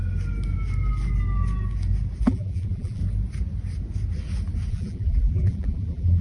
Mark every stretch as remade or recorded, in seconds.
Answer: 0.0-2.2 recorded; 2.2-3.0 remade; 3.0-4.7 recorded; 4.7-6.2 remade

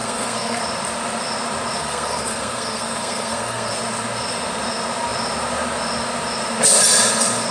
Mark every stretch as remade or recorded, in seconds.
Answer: 0.0-0.6 remade; 0.6-1.8 recorded; 1.8-3.7 remade; 3.7-7.5 recorded

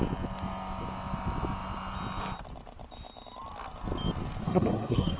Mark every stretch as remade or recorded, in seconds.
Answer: 0.0-4.4 recorded; 4.4-5.2 remade